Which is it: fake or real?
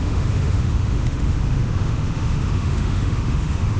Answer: fake